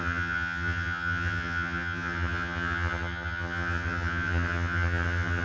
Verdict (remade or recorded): remade